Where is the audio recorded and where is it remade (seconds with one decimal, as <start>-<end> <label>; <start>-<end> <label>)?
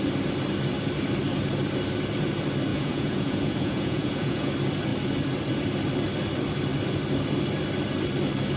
0.0-2.7 recorded; 2.7-4.5 remade; 4.5-8.6 recorded